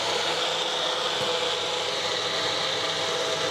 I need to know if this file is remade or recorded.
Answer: recorded